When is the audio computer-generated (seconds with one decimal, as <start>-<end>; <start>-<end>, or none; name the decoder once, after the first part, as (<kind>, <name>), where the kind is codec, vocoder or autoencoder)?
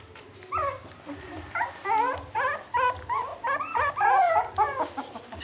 none